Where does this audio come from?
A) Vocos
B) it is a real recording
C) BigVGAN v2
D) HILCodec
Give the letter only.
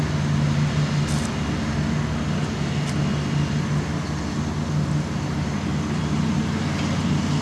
B